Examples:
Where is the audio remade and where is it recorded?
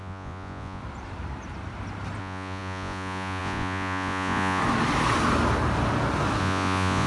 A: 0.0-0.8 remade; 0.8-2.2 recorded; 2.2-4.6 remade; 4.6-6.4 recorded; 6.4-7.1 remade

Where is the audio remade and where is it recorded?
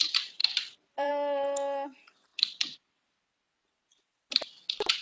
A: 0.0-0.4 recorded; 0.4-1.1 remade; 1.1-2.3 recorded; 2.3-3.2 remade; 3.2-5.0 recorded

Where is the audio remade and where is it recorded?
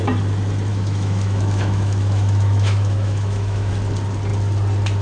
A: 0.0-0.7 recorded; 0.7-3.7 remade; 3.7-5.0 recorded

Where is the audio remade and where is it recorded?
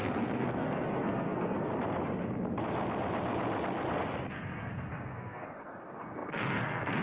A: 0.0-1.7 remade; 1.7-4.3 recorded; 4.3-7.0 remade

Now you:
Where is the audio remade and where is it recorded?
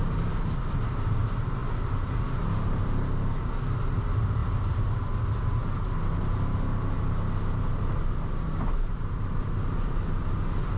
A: 0.0-10.8 recorded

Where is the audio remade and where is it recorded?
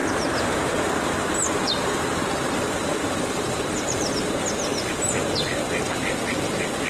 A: 0.0-4.1 remade; 4.1-6.9 recorded